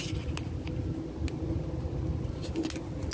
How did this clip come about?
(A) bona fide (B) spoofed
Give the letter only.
A